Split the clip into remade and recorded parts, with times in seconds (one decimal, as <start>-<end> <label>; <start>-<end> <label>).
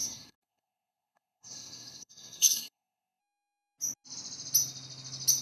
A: 0.0-3.2 remade; 3.2-5.4 recorded